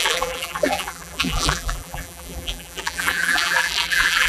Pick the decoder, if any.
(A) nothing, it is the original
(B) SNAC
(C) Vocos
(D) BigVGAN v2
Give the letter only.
D